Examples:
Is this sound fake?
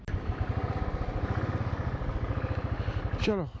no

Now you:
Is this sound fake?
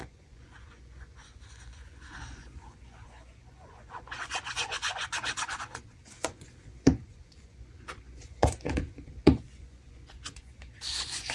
yes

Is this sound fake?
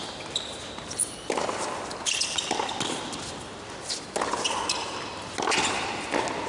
no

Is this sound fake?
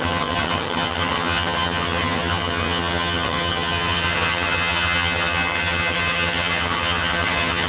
yes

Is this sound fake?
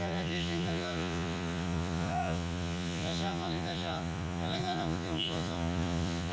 yes